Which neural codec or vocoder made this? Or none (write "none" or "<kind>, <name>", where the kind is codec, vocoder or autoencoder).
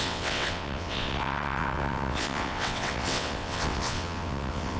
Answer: vocoder, WaveNeXt